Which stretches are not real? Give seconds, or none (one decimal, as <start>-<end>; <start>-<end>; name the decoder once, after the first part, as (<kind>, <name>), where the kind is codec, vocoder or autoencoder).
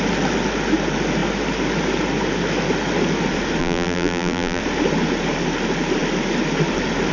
3.6-4.6 (vocoder, BigVGAN v2)